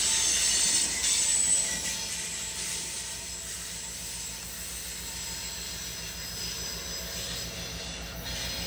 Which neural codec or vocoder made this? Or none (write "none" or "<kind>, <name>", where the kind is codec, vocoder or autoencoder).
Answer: none